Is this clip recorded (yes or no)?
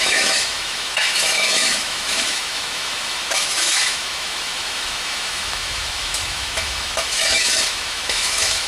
no